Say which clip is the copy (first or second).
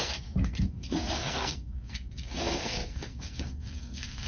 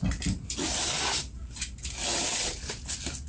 first